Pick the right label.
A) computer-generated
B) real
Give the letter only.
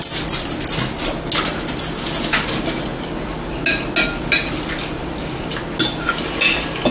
B